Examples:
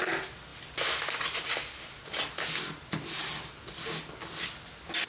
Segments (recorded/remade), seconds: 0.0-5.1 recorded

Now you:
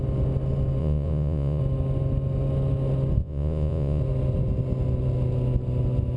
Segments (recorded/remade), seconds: 0.0-0.8 recorded; 0.8-1.6 remade; 1.6-3.2 recorded; 3.2-4.0 remade; 4.0-6.2 recorded

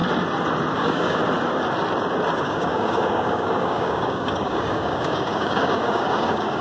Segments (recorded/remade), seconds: 0.0-0.7 recorded; 0.7-1.2 remade; 1.2-2.4 recorded; 2.4-6.6 remade

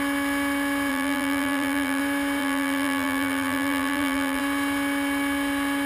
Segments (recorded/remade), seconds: 0.0-0.9 recorded; 0.9-2.0 remade; 2.0-2.4 recorded; 2.4-4.4 remade; 4.4-5.9 recorded

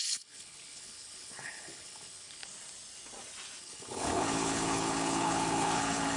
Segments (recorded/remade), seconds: 0.0-2.4 remade; 2.4-3.6 recorded; 3.6-6.2 remade

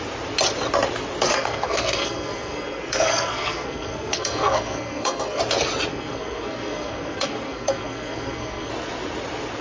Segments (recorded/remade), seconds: 0.0-1.3 recorded; 1.3-5.4 remade; 5.4-5.9 recorded; 5.9-8.7 remade; 8.7-9.6 recorded

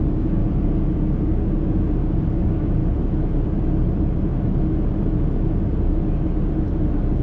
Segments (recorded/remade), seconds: 0.0-0.4 remade; 0.4-0.9 recorded; 0.9-2.8 remade; 2.8-7.2 recorded